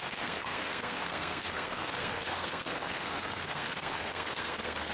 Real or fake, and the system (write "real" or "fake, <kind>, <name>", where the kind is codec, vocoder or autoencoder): fake, codec, SNAC